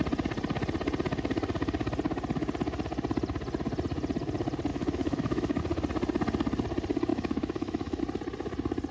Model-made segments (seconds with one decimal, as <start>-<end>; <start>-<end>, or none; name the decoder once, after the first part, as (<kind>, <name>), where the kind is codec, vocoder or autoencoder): 4.7-5.6 (autoencoder, DAC-VAE); 7.1-8.0

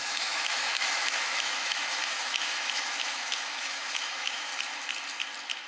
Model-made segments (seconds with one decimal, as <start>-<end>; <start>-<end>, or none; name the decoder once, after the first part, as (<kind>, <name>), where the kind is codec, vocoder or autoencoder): 0.0-4.5 (autoencoder, DAC-VAE)

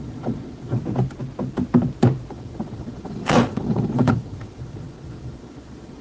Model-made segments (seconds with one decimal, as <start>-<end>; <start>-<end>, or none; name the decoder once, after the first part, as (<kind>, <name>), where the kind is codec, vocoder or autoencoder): 0.0-0.8 (vocoder, Vocos); 2.3-6.0

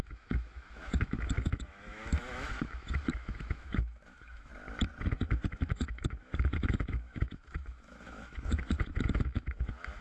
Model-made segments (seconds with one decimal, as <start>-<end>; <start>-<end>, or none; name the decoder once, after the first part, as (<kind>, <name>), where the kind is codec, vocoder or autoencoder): 0.0-4.5 (autoencoder, DAC-VAE); 5.2-10.0

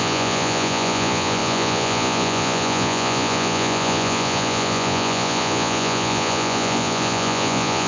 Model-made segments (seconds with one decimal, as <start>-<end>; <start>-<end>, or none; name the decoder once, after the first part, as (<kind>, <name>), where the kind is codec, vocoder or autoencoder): 0.0-7.9 (vocoder, Vocos)

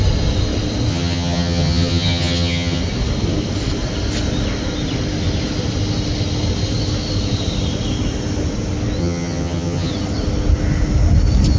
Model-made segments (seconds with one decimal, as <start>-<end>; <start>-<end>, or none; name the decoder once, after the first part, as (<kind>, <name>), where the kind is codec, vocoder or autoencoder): 0.9-2.8 (vocoder, HiFi-GAN); 9.0-9.9